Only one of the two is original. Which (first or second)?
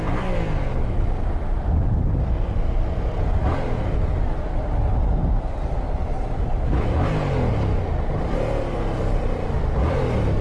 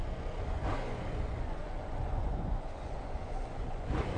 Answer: first